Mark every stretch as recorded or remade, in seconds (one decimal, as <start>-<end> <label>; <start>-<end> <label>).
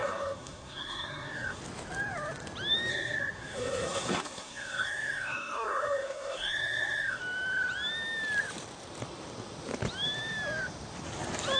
0.0-1.6 remade; 1.6-2.9 recorded; 2.9-7.2 remade; 7.2-11.6 recorded